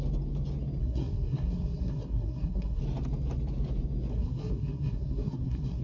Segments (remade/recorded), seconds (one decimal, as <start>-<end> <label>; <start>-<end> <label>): 0.0-0.8 recorded; 0.8-2.8 remade; 2.8-4.1 recorded; 4.1-5.8 remade